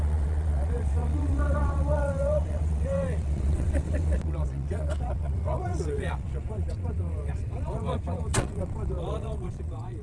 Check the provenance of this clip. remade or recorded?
remade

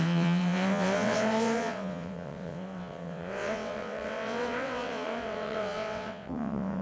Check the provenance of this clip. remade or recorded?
remade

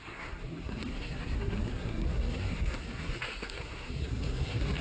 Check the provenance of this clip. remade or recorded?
remade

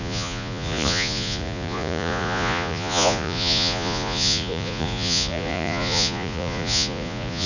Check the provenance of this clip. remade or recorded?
remade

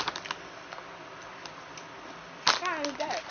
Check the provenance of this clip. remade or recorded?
recorded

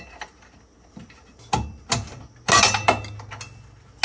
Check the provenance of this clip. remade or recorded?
recorded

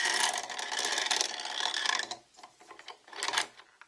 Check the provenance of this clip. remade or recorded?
recorded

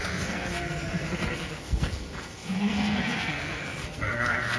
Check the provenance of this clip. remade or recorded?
remade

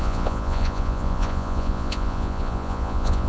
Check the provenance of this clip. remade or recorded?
remade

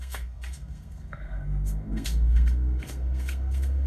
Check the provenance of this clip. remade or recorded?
remade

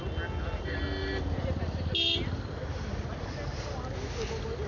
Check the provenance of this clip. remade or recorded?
recorded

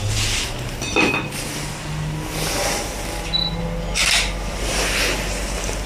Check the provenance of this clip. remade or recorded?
remade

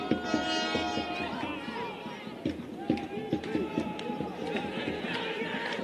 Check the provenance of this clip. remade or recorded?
recorded